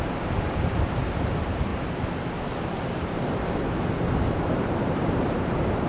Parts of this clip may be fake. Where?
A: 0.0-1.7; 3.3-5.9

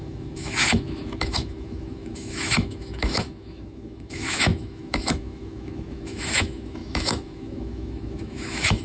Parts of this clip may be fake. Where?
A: 0.0-8.8

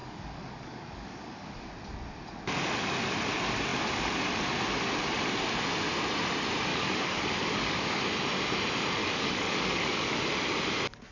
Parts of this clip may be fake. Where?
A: 0.0-1.7; 6.7-8.0; 9.0-10.2

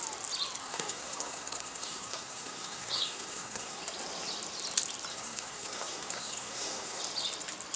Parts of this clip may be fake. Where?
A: 0.6-3.8; 5.1-7.0

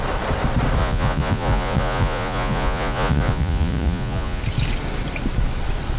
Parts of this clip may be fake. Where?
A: 0.8-4.4